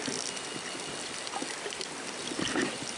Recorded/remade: recorded